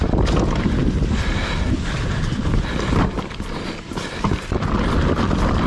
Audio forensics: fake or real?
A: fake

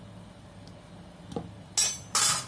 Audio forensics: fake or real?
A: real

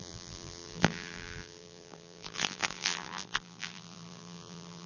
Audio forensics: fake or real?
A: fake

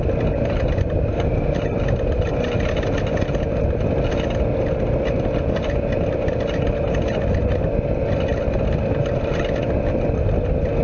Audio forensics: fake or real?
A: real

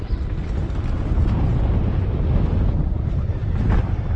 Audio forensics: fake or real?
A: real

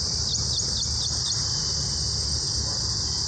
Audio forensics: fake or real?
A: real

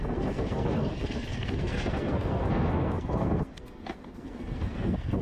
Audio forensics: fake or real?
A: fake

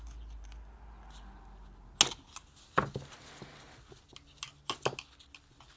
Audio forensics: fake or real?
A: real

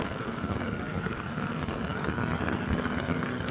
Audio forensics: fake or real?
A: fake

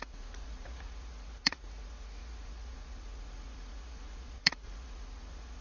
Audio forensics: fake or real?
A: fake